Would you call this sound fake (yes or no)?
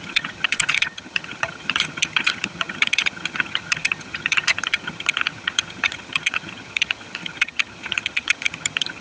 yes